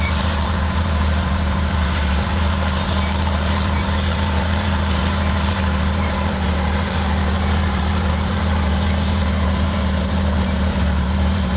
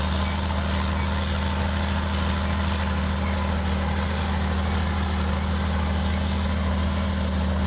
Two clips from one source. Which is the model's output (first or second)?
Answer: first